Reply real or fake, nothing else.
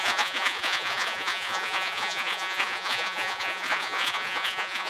fake